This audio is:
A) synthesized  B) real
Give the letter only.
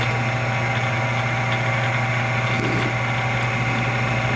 B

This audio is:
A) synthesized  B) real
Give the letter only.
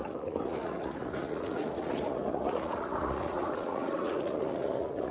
A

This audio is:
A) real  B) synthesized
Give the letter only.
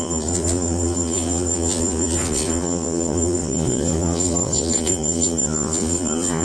B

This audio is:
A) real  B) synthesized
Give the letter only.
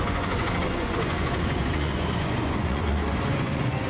B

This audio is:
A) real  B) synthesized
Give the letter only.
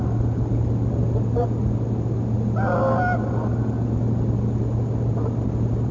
A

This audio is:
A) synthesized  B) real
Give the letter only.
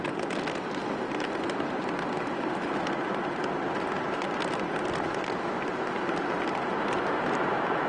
B